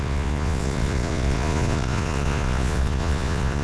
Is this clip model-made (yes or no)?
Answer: yes